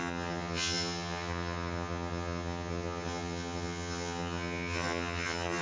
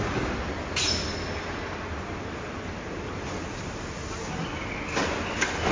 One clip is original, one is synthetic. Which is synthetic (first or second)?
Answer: first